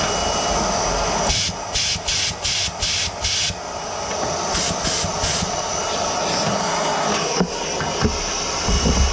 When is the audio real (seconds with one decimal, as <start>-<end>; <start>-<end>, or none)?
0.0-5.3; 5.8-9.1